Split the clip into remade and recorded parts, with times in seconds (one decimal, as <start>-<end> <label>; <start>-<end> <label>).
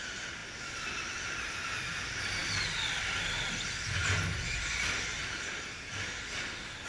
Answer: 0.0-6.9 recorded